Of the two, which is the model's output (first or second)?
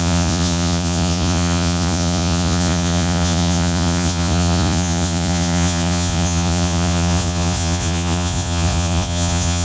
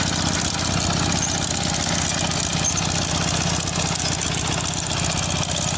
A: first